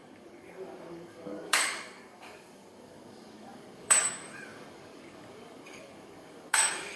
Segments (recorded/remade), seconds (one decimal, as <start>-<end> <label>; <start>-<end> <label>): 0.0-7.0 remade